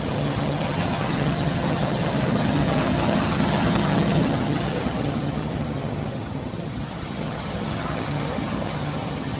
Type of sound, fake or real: fake